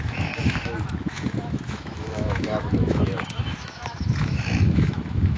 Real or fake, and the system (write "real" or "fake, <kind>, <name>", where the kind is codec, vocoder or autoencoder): fake, autoencoder, DAC-VAE